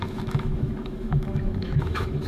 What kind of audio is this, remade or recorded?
remade